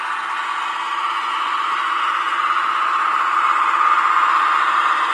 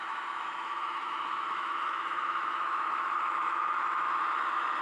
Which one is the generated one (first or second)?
second